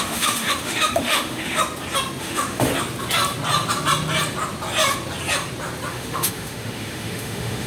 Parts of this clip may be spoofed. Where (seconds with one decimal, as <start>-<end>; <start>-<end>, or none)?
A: 0.0-1.6; 2.2-2.7; 5.9-7.7